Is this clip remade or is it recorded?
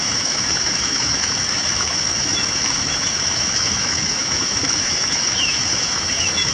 remade